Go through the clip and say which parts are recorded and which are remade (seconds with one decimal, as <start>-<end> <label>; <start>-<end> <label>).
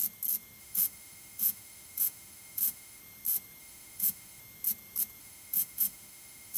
0.0-0.6 recorded; 0.6-3.0 remade; 3.0-3.6 recorded; 3.6-4.4 remade; 4.4-5.2 recorded; 5.2-6.6 remade